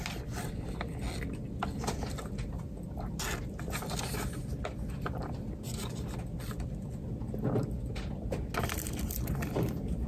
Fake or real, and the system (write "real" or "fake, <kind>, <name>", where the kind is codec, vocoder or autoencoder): real